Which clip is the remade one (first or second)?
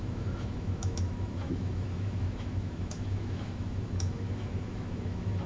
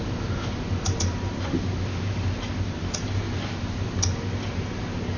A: first